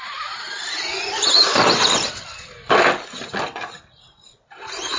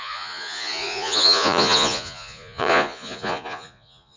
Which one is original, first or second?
first